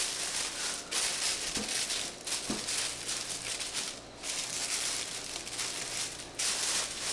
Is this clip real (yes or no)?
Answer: yes